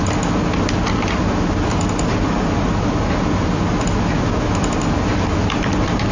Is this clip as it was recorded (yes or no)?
yes